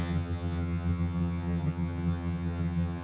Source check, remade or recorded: remade